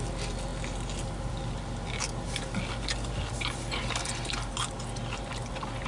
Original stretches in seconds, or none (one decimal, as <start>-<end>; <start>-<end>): 0.0-5.9